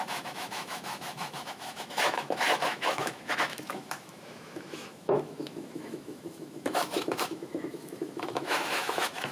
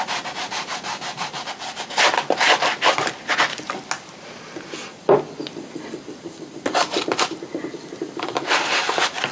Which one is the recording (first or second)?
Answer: second